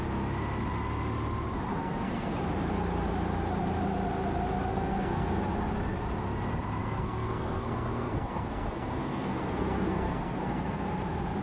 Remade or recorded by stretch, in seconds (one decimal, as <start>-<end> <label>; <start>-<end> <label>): 0.0-1.7 recorded; 1.7-2.3 remade; 2.3-4.7 recorded; 4.7-5.4 remade; 5.4-6.8 recorded; 6.8-10.9 remade; 10.9-11.4 recorded